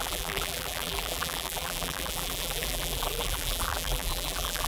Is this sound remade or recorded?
remade